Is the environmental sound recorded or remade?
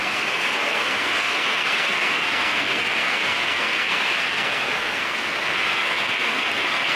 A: remade